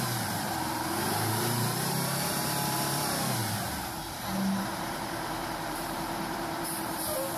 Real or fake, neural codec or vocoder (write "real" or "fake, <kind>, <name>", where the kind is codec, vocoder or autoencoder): fake, vocoder, BigVGAN v2